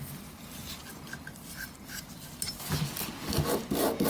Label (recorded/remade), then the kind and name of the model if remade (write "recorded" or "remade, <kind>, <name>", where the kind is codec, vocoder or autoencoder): recorded